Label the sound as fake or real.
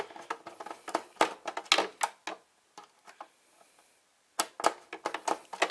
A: real